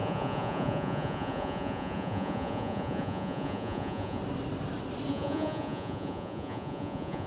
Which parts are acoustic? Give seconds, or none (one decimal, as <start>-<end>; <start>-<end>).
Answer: 4.2-5.1